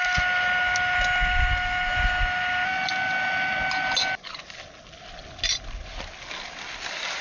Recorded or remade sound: recorded